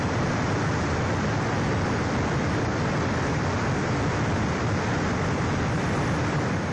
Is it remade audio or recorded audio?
recorded